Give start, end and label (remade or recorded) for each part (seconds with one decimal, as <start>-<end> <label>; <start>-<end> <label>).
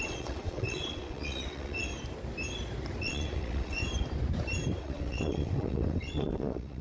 0.0-1.9 remade; 1.9-3.0 recorded; 3.0-3.8 remade; 3.8-4.8 recorded; 4.8-6.8 remade